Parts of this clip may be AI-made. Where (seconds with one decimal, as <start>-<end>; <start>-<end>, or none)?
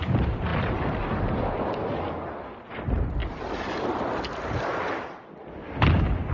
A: none